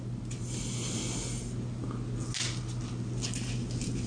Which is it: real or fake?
real